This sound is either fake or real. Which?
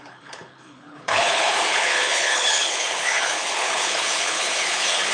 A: fake